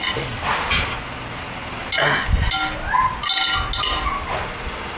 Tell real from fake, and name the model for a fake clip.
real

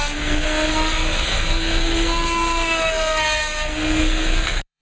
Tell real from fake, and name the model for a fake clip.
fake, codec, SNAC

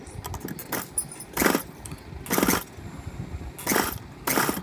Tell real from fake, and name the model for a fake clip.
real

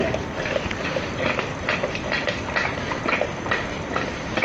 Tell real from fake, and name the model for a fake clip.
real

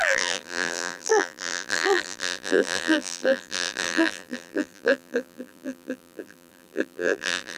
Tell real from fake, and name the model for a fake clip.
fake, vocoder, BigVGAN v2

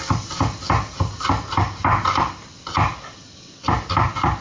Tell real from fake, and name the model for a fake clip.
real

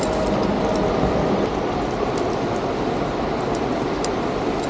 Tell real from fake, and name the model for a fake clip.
real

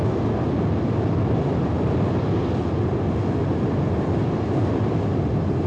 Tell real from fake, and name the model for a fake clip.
real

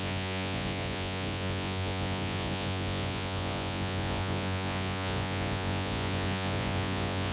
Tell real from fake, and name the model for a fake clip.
fake, vocoder, Vocos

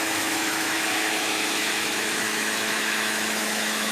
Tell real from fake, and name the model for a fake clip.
fake, autoencoder, DAC-VAE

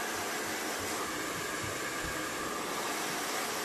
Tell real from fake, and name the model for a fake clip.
real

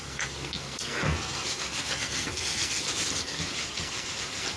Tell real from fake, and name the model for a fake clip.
fake, codec, SNAC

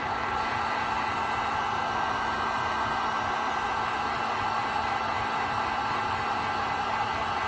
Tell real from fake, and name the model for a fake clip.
real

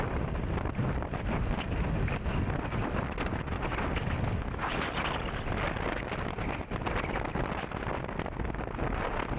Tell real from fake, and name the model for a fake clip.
real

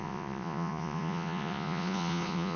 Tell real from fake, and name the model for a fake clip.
fake, vocoder, Vocos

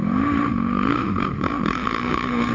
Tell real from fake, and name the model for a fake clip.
fake, autoencoder, DAC-VAE